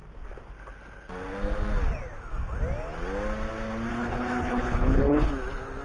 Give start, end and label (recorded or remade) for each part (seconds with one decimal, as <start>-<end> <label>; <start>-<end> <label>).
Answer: 0.0-3.9 recorded; 3.9-5.3 remade; 5.3-5.8 recorded